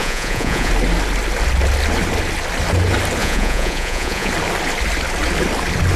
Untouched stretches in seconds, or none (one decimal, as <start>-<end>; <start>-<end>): 0.7-3.2; 4.3-6.0